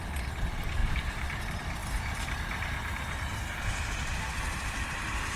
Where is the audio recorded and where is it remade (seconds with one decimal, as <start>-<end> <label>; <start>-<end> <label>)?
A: 0.0-0.8 recorded; 0.8-1.4 remade; 1.4-1.8 recorded; 1.8-3.4 remade; 3.4-5.4 recorded